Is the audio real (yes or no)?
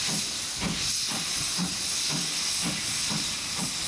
yes